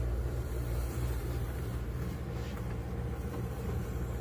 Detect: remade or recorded remade